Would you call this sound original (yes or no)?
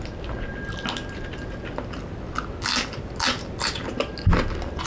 yes